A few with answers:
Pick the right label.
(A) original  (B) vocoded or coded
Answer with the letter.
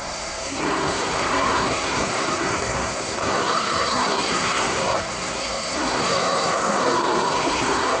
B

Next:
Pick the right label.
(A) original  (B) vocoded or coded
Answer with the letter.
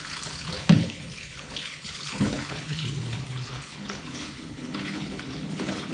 B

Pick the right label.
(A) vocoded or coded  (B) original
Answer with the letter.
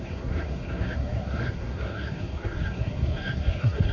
A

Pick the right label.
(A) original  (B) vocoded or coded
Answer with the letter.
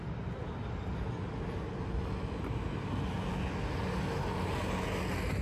A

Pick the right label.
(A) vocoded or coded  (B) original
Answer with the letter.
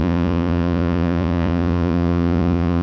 A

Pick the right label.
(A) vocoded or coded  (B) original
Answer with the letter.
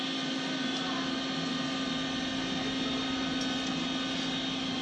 B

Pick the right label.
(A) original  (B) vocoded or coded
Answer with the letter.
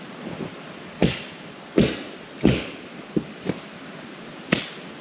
A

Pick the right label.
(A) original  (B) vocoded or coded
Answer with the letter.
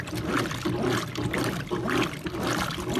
A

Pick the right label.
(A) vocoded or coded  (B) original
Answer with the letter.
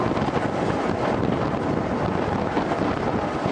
B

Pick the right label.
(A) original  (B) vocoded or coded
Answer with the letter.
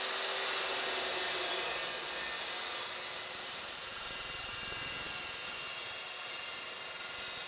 A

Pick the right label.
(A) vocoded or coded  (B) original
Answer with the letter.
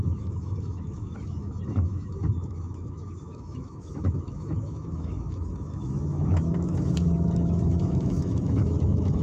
A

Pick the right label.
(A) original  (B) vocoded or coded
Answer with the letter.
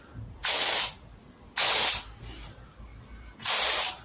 A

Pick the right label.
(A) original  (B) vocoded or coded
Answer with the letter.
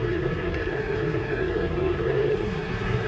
B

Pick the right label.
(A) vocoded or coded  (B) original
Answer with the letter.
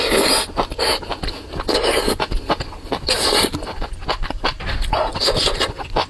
B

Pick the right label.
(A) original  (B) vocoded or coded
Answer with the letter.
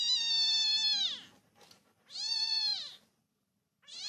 A